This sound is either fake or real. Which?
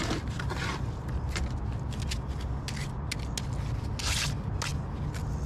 real